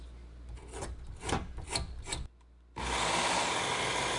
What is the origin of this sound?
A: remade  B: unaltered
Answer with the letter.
B